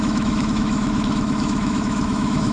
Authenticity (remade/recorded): remade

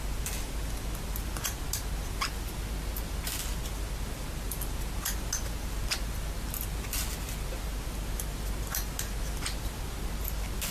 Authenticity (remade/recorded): recorded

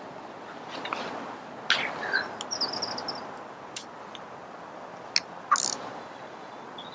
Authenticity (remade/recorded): recorded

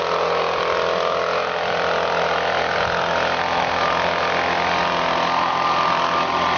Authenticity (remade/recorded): recorded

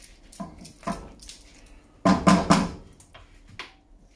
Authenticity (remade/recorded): recorded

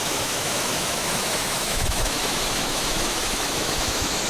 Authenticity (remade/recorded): remade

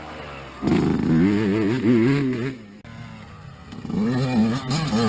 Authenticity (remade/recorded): recorded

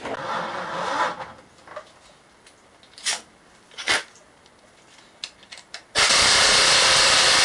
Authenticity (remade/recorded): recorded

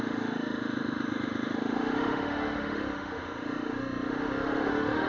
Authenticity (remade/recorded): remade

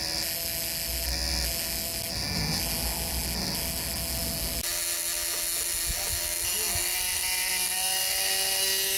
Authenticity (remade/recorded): recorded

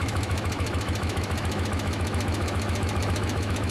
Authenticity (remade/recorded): remade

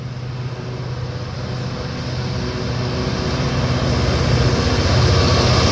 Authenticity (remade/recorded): recorded